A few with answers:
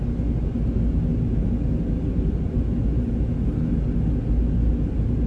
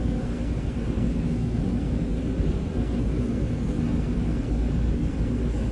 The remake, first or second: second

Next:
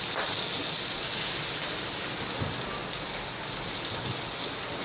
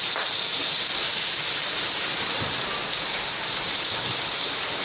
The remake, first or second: second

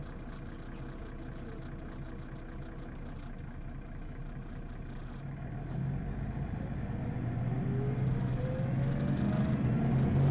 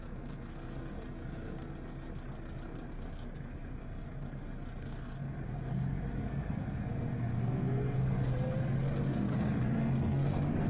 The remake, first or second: second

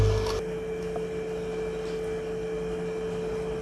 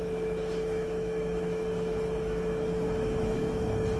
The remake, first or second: second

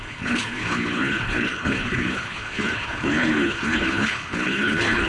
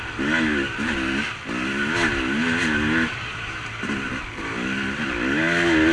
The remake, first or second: first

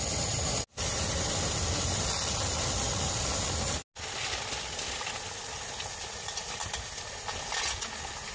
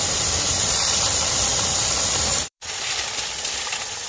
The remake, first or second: second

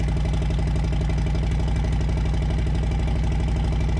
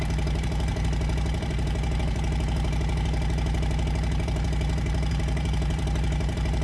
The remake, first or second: second